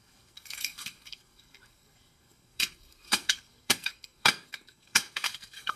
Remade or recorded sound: remade